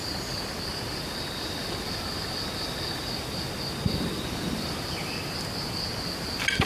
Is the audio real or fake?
real